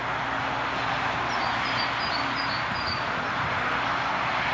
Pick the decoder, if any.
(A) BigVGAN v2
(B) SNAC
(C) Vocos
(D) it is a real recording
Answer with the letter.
D